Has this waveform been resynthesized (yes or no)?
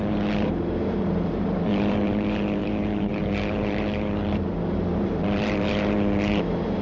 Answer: yes